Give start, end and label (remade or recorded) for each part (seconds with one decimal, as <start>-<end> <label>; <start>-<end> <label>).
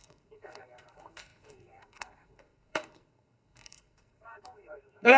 0.0-5.2 remade